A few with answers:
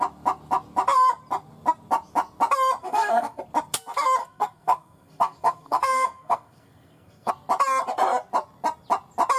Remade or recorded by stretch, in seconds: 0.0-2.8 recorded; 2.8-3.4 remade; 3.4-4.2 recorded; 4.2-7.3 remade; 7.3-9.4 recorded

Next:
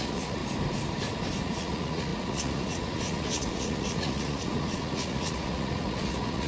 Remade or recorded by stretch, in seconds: 0.0-0.4 remade; 0.4-1.4 recorded; 1.4-6.5 remade

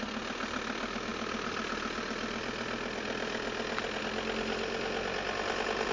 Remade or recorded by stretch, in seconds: 0.0-5.9 recorded

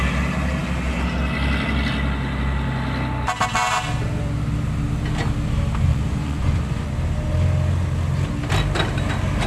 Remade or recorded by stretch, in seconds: 0.0-5.9 recorded; 5.9-6.9 remade; 6.9-9.5 recorded